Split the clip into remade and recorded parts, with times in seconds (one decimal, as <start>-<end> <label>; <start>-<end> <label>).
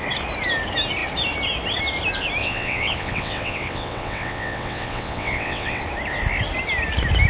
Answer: 0.0-2.4 recorded; 2.4-5.8 remade; 5.8-7.3 recorded